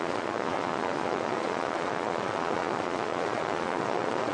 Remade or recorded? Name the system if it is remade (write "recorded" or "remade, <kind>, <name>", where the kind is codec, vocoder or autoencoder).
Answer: remade, vocoder, Vocos